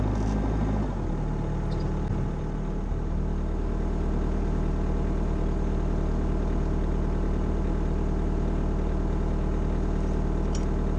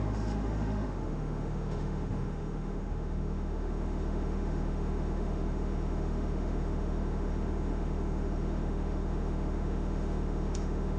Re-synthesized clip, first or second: second